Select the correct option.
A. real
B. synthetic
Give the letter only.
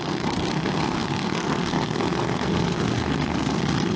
B